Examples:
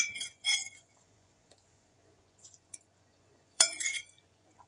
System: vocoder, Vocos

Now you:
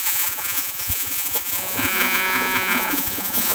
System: vocoder, Vocos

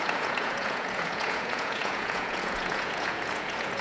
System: vocoder, Vocos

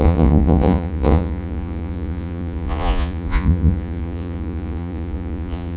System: vocoder, Vocos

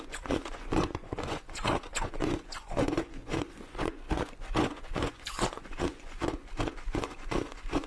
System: vocoder, Vocos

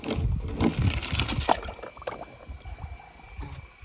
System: none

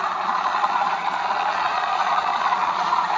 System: vocoder, Vocos